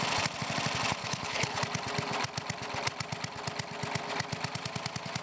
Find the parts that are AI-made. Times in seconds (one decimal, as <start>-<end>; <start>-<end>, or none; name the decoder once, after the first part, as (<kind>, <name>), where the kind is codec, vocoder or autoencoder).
1.0-1.6 (codec, HILCodec)